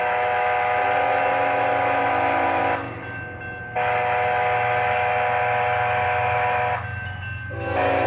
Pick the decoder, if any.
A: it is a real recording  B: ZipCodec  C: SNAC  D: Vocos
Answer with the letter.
A